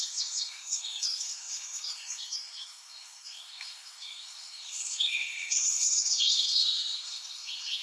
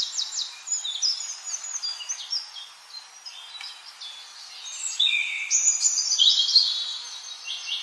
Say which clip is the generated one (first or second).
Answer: first